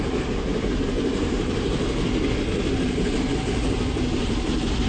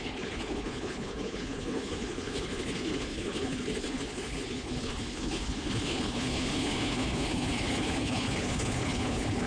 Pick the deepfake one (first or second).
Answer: second